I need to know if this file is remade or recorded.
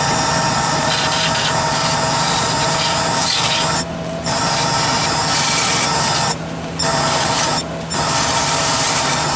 recorded